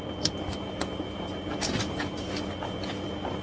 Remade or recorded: recorded